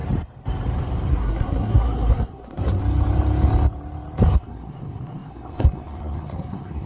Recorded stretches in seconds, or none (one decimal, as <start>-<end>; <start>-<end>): 0.0-1.1; 2.8-4.3